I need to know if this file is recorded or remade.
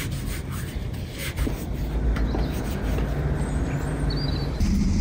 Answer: recorded